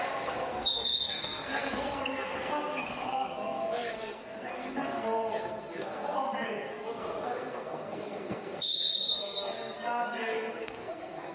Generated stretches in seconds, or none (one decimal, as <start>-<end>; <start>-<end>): 0.0-11.3